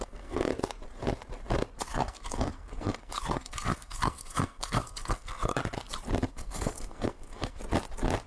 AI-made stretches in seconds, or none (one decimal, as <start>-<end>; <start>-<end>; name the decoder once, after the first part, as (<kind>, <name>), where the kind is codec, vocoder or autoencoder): 0.0-0.5 (codec, SNAC); 1.8-5.6; 6.3-7.6